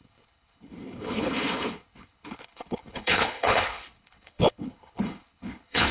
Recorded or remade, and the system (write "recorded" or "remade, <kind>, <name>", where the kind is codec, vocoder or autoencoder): remade, codec, HILCodec